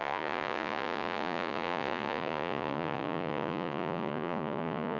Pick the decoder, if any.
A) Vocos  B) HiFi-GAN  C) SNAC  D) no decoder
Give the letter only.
A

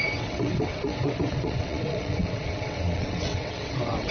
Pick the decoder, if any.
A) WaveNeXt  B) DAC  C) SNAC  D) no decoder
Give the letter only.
A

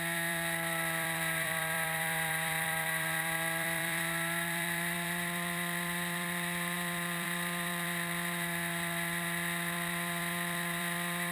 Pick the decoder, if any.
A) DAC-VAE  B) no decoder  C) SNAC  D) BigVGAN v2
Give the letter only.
D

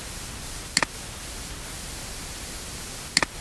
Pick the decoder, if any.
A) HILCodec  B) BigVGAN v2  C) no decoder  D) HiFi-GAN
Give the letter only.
C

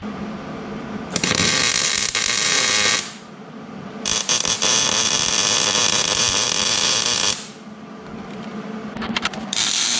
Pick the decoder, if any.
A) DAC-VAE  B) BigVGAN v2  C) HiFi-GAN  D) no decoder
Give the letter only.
B